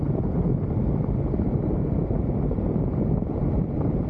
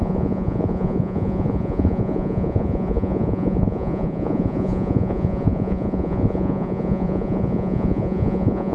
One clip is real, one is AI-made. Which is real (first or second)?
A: first